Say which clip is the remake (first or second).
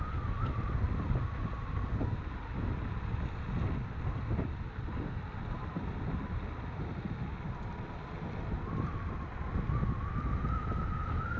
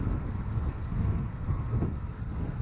second